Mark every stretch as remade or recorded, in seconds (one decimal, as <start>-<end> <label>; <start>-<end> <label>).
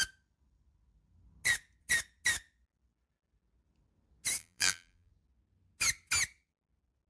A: 0.0-4.4 recorded; 4.4-5.1 remade; 5.1-7.1 recorded